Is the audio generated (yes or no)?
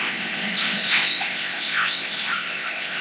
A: yes